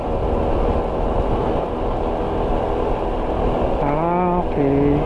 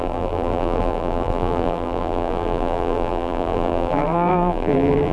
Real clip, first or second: first